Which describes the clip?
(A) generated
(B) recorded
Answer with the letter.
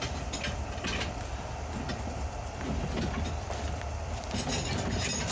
B